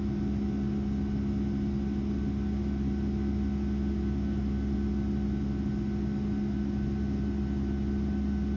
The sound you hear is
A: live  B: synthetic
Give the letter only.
A